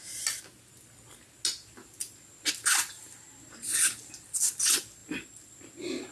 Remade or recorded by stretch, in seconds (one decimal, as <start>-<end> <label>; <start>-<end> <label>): 0.0-6.1 recorded